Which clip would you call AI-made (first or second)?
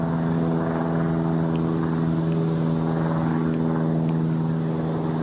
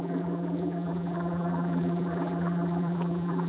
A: second